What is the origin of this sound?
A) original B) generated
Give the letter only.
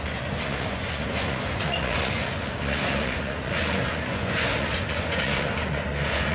B